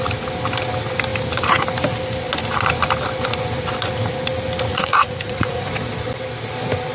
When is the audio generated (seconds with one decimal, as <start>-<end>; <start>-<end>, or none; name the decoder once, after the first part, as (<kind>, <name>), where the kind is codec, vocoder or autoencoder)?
4.7-5.7 (vocoder, Vocos)